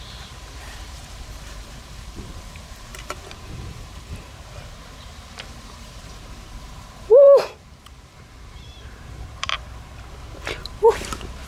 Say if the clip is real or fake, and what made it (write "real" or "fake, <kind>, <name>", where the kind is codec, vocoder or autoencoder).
fake, vocoder, BigVGAN v2